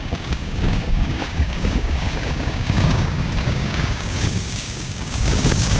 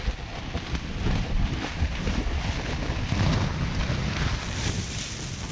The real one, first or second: second